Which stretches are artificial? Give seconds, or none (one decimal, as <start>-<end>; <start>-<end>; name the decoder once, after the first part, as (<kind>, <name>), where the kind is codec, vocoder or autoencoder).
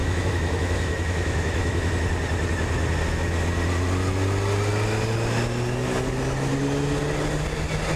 0.0-1.9 (autoencoder, DAC-VAE)